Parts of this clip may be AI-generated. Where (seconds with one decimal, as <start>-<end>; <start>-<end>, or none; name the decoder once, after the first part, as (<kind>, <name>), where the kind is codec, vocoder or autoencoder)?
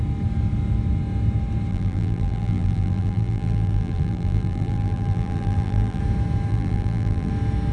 1.7-6.0 (vocoder, BigVGAN v2); 6.5-7.3